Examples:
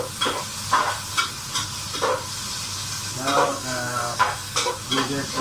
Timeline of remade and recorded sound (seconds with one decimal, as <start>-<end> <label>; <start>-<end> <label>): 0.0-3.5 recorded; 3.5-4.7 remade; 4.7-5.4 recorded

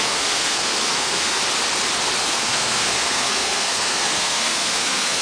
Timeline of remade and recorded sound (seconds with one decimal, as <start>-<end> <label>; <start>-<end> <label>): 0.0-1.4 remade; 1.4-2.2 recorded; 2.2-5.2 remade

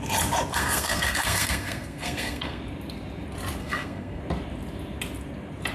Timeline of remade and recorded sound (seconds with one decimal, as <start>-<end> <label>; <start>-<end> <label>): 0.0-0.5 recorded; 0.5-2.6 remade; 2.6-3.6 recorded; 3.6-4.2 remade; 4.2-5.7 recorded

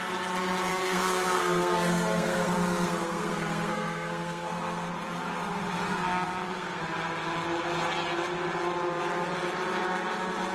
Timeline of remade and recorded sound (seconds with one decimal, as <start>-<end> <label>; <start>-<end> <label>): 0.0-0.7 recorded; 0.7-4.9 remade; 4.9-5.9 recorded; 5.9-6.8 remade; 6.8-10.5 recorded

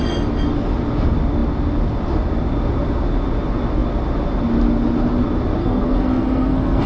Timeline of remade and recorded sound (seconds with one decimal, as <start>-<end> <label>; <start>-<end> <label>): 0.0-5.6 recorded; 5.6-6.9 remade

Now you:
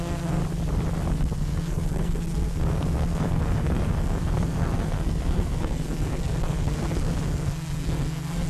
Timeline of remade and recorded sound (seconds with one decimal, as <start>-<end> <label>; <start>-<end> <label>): 0.0-0.4 remade; 0.4-1.1 recorded; 1.1-8.5 remade